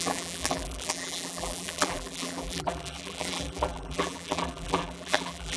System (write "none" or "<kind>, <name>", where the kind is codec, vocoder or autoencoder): vocoder, BigVGAN v2